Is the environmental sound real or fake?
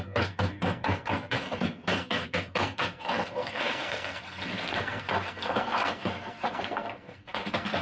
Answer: fake